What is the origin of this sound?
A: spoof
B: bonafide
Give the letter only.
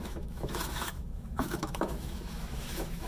A